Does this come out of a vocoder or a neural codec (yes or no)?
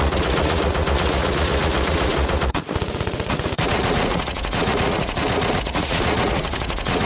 yes